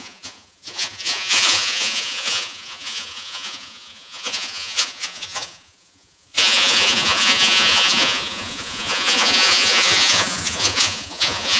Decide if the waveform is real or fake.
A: fake